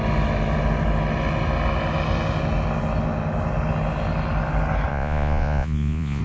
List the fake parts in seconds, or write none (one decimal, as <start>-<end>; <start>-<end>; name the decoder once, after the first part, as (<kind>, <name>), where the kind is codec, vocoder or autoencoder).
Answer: 4.9-6.2 (vocoder, Vocos)